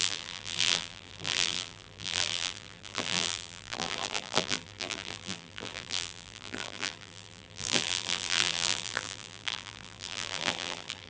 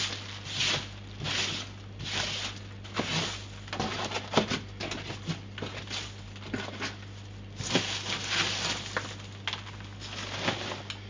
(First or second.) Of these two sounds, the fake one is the first